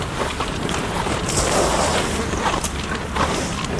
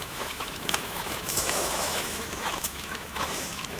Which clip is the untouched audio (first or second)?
first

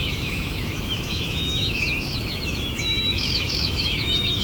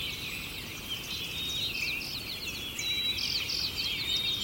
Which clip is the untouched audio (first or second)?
second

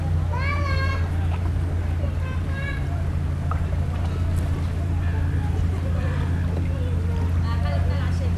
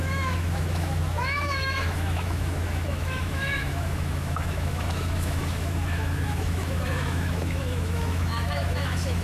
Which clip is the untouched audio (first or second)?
first